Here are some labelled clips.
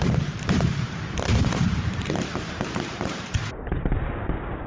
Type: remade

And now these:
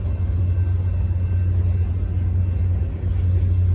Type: recorded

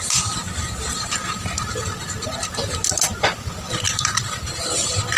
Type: recorded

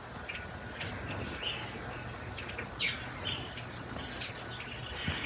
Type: recorded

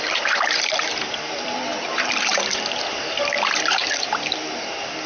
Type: remade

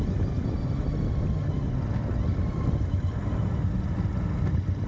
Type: recorded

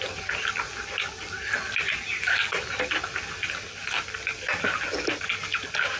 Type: remade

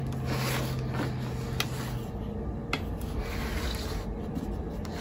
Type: recorded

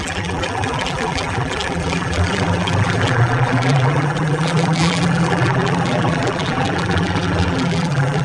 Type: remade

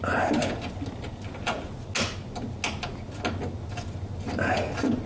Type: recorded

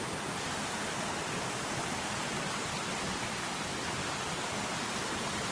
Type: recorded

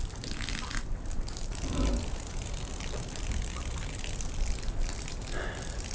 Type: remade